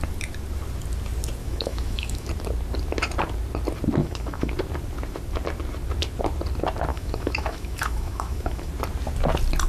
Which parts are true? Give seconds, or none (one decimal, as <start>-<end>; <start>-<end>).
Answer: 0.0-1.4; 2.3-4.0; 4.5-6.9; 8.7-9.7